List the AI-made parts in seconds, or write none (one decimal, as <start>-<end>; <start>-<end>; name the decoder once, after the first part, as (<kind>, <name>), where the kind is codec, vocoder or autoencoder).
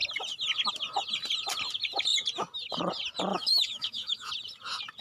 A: 3.3-4.3 (autoencoder, DAC-VAE)